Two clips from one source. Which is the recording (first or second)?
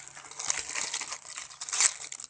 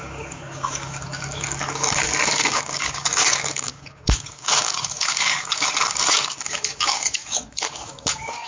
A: first